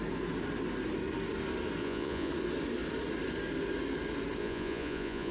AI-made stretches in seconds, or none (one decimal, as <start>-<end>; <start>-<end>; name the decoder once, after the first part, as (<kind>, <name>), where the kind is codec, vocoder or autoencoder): 1.8-2.3 (vocoder, Vocos); 4.4-5.3